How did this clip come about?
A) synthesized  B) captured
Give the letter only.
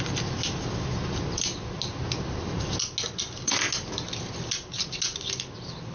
B